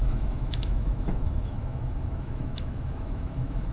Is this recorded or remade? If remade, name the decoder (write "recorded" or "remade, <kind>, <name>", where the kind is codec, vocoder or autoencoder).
remade, autoencoder, DAC-VAE